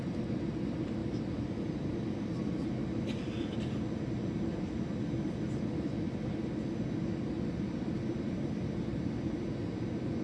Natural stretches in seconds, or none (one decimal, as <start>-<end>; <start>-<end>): 0.0-10.2